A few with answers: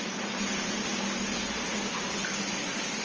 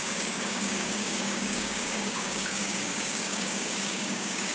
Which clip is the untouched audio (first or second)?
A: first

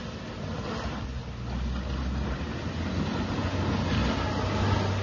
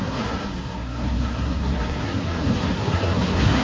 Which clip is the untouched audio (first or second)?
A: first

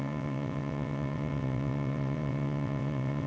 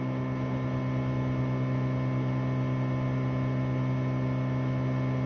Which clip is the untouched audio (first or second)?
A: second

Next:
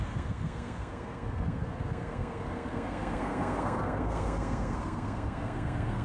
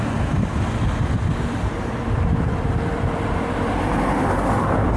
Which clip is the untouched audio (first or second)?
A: second